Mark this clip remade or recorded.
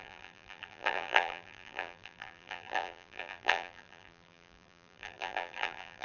remade